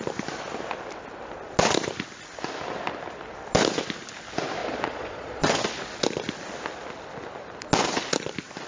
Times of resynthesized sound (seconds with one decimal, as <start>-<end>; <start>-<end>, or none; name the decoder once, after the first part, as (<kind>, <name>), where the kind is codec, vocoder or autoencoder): 4.6-5.6 (vocoder, Vocos)

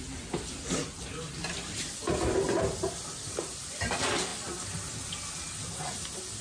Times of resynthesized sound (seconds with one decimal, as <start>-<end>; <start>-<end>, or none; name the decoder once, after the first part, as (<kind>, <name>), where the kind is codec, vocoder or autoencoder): 0.0-4.3 (vocoder, BigVGAN v2)

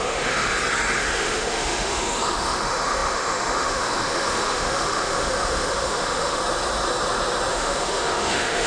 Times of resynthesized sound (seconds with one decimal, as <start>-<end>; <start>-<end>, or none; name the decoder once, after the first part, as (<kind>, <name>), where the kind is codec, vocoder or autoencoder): 0.0-0.5 (autoencoder, DAC-VAE); 1.0-6.4; 7.5-8.7

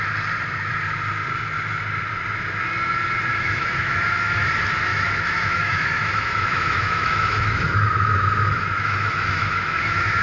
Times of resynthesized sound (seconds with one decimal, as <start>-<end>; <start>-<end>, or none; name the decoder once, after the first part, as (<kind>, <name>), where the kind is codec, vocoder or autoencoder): 3.3-4.5 (autoencoder, DAC-VAE); 4.9-10.2

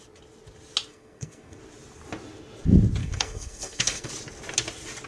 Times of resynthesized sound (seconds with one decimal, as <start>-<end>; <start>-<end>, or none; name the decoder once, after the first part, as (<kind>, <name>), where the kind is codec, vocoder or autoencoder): 0.9-1.6 (codec, SNAC); 3.0-4.1

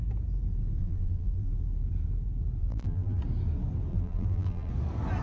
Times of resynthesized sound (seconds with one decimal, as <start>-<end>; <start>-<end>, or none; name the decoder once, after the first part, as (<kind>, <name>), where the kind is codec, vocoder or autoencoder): 0.8-1.5 (vocoder, BigVGAN v2); 2.6-3.2; 3.9-4.7

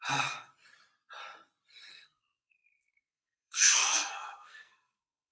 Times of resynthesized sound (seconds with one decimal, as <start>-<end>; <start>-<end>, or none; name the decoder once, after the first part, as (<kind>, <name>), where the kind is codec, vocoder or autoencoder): 0.0-0.5 (codec, SNAC); 1.9-5.3